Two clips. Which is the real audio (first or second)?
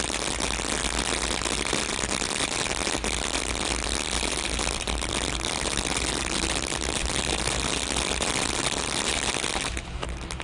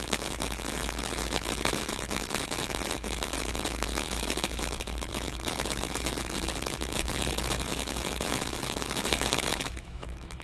first